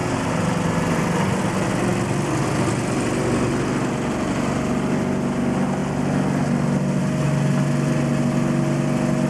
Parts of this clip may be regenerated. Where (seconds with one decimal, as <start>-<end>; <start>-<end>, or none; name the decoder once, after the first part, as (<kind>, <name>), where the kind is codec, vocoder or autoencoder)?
none